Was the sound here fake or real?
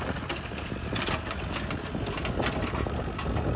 real